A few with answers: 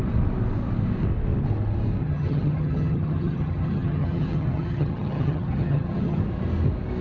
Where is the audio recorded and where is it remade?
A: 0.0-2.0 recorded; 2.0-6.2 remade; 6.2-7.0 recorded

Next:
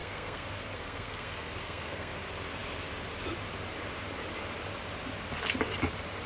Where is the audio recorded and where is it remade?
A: 0.0-2.2 remade; 2.2-6.3 recorded

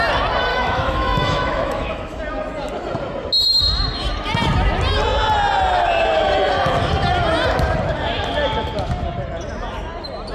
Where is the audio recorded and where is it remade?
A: 0.0-0.5 recorded; 0.5-2.2 remade; 2.2-10.3 recorded

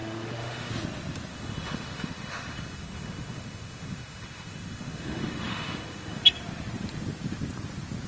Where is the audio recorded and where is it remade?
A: 0.0-0.7 remade; 0.7-1.3 recorded; 1.3-6.2 remade; 6.2-8.1 recorded

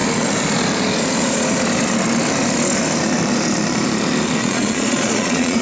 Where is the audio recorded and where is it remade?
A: 0.0-4.4 recorded; 4.4-5.6 remade

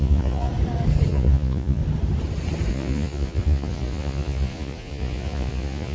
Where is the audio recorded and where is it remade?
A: 0.0-0.5 remade; 0.5-1.1 recorded; 1.1-1.8 remade; 1.8-2.7 recorded; 2.7-5.9 remade